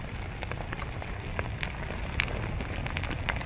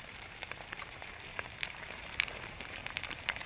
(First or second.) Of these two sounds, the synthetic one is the second